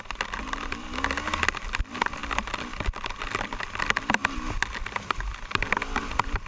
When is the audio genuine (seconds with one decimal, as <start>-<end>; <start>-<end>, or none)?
0.0-6.5